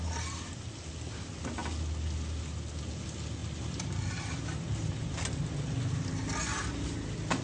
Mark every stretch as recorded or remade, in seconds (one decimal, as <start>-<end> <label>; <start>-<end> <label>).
0.0-7.4 recorded